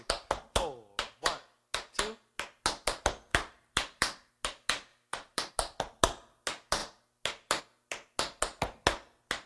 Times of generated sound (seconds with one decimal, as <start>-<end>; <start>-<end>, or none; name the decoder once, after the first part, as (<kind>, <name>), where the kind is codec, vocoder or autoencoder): 3.3-4.3 (vocoder, BigVGAN v2); 4.9-5.5